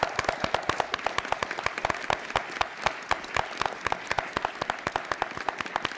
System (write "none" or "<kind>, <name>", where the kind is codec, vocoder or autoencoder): none